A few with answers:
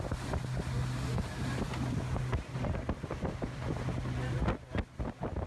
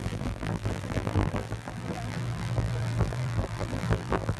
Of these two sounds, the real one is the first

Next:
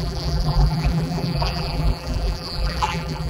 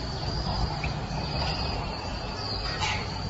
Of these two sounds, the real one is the second